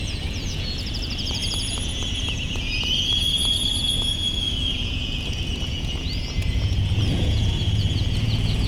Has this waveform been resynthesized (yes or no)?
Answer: yes